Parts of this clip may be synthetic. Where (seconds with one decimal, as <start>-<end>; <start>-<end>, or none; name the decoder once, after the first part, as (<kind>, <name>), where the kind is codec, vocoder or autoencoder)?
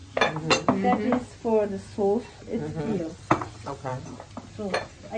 2.8-3.9 (vocoder, WaveNeXt)